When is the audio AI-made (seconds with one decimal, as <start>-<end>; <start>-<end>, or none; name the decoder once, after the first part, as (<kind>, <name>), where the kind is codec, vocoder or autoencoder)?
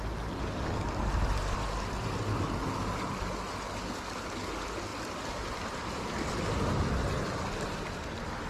none